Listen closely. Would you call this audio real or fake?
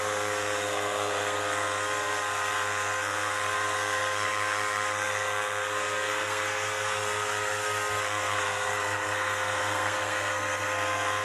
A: fake